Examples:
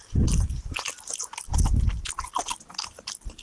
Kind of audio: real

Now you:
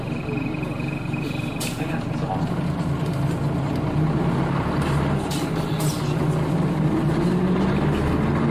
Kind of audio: real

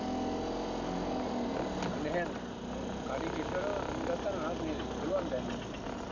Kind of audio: real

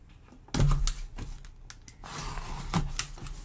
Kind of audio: real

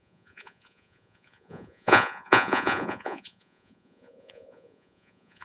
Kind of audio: fake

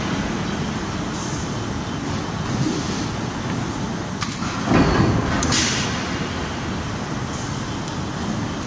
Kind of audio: real